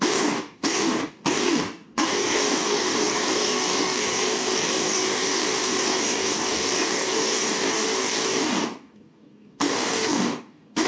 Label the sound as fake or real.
fake